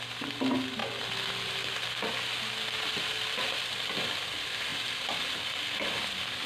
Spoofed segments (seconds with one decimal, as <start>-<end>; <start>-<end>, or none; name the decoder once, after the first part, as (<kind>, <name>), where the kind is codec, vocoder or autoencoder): none